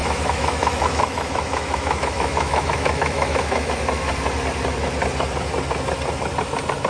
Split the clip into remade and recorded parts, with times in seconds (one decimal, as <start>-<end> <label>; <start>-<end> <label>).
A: 0.0-4.1 remade; 4.1-6.9 recorded